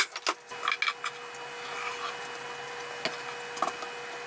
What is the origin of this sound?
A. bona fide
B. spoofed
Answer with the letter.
A